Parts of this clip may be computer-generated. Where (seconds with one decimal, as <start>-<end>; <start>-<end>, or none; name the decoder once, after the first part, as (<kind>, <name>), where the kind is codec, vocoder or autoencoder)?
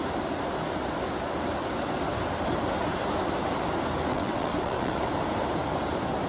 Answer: 4.1-5.1 (vocoder, WaveNeXt)